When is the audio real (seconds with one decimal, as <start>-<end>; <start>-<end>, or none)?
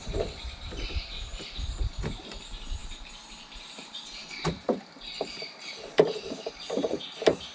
none